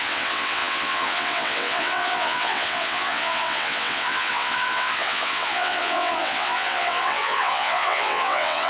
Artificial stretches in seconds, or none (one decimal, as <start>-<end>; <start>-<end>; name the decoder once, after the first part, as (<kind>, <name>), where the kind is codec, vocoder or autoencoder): 0.0-8.7 (vocoder, WaveNeXt)